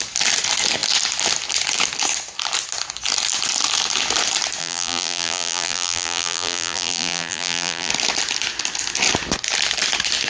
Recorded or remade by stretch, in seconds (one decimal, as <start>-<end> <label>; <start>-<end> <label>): 0.0-4.6 recorded; 4.6-7.9 remade; 7.9-10.3 recorded